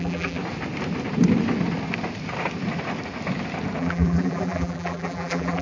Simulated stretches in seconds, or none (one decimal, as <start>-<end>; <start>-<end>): 0.0-0.4; 3.8-5.6